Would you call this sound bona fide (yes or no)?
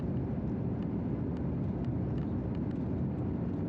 yes